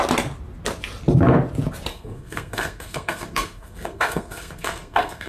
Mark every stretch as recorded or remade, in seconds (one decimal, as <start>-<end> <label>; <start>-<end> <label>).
0.0-1.9 recorded; 1.9-5.3 remade